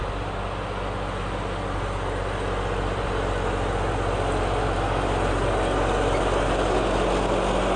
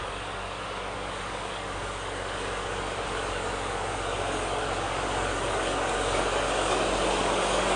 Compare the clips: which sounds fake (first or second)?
second